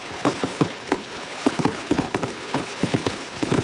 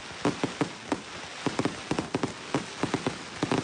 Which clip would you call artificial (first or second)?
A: first